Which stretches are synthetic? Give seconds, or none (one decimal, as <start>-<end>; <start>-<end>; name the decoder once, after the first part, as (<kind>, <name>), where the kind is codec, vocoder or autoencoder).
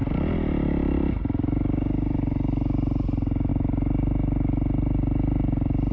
none